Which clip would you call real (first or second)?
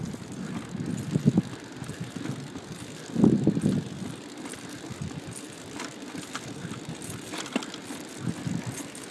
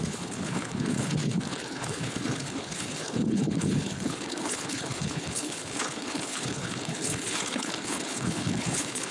first